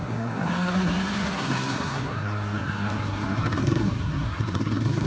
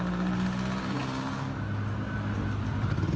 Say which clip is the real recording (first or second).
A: second